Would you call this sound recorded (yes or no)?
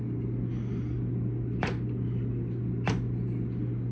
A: yes